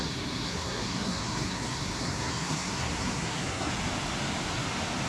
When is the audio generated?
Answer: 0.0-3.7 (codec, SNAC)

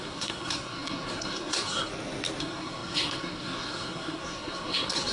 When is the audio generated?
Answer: 0.0-1.9 (codec, SNAC); 2.4-5.1